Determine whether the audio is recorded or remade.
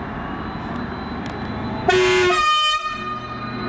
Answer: recorded